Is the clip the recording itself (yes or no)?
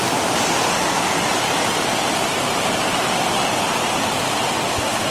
yes